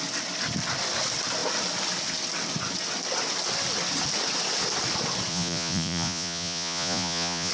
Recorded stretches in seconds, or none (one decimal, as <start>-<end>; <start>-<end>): 0.0-5.3